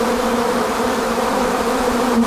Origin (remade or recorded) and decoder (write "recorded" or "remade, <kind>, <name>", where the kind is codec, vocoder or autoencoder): remade, vocoder, BigVGAN v2